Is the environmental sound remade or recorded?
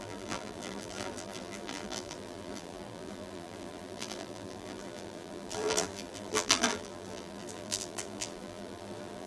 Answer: remade